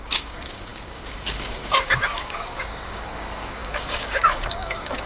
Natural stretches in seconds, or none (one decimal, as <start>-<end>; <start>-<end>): none